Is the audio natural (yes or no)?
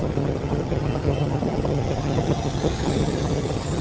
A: no